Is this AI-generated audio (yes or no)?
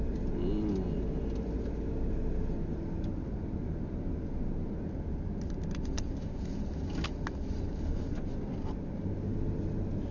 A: no